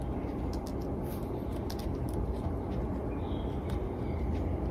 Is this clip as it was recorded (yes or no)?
yes